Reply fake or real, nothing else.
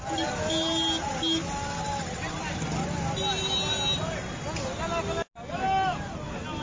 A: real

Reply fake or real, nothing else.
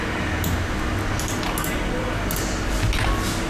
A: real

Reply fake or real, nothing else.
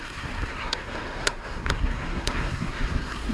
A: fake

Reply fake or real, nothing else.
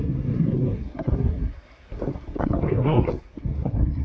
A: fake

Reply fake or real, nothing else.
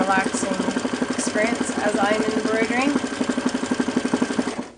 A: real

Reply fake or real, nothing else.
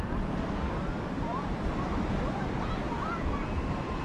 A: real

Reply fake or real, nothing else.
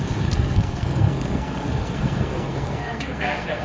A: fake